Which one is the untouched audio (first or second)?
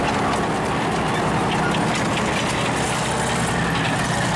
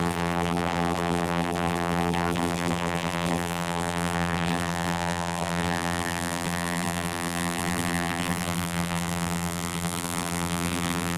first